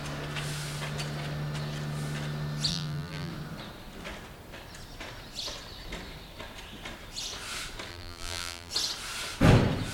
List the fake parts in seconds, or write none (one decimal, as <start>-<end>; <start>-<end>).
2.7-3.3; 7.9-8.7